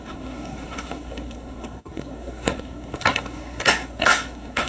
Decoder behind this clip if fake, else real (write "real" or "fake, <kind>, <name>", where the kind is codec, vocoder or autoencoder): fake, codec, SNAC